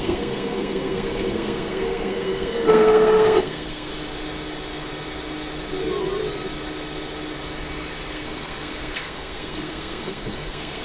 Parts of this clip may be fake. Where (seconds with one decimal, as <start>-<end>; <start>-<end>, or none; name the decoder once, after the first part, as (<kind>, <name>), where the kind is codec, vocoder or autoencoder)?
0.0-3.9 (codec, SNAC); 8.1-10.8